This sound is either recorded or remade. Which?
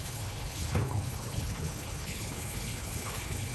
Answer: remade